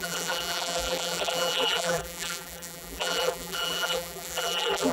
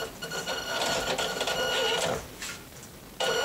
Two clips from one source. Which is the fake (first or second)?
first